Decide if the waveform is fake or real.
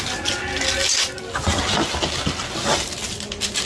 real